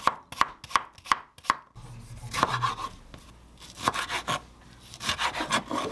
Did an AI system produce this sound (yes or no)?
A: no